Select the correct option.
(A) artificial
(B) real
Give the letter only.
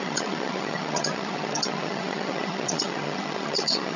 A